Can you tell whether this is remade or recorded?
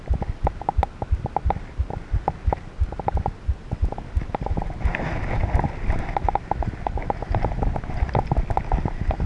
recorded